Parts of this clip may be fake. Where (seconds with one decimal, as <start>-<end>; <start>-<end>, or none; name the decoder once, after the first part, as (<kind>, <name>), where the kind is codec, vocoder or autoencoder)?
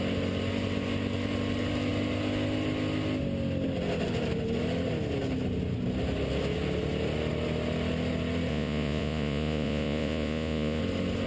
8.5-10.8 (vocoder, Vocos)